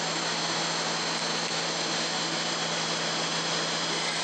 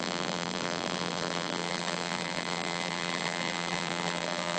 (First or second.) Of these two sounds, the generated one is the second